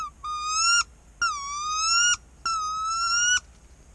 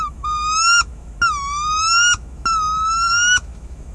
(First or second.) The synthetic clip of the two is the second